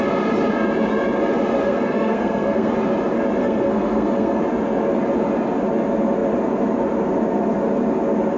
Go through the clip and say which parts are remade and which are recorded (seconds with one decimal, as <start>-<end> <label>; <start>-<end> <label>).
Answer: 0.0-1.6 recorded; 1.6-2.7 remade; 2.7-3.4 recorded; 3.4-4.4 remade; 4.4-8.4 recorded